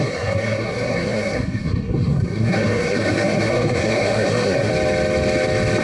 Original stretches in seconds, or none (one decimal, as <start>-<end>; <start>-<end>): 4.7-5.8